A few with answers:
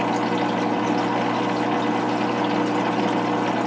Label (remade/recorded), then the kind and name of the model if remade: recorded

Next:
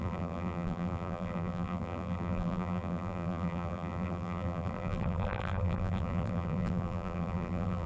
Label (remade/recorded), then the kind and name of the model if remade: remade, vocoder, BigVGAN v2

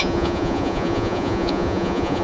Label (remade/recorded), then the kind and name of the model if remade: remade, vocoder, Vocos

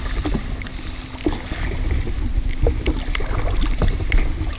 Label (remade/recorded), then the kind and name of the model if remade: recorded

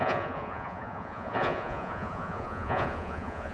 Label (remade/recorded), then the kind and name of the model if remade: remade, vocoder, Vocos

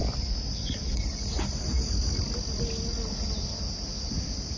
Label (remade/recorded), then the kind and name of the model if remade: recorded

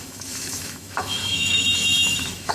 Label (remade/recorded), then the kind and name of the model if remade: remade, autoencoder, DAC-VAE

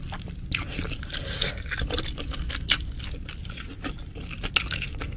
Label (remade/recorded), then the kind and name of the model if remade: recorded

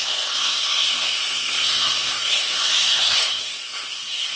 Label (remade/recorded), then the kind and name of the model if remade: remade, codec, SNAC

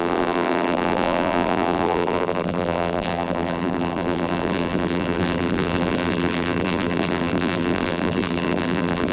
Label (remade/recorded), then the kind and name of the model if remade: remade, vocoder, BigVGAN v2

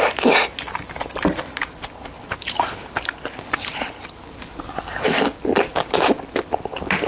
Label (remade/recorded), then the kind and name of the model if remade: recorded